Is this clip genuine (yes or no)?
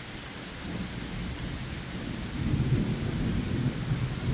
yes